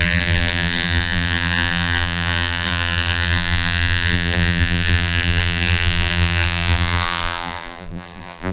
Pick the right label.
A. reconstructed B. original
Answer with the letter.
A